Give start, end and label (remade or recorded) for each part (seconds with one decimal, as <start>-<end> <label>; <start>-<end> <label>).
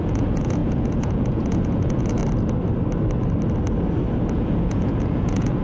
0.0-2.2 remade; 2.2-4.3 recorded; 4.3-5.6 remade